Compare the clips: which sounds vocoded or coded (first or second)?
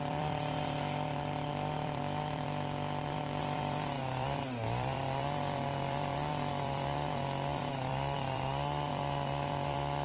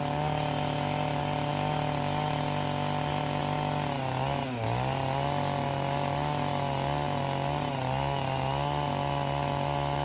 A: first